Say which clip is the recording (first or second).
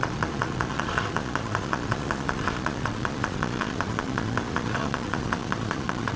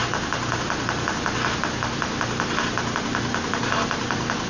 second